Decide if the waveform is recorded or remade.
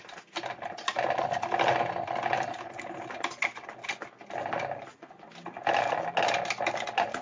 recorded